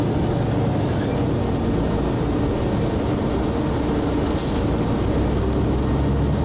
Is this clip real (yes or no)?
yes